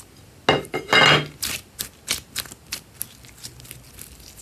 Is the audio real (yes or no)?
yes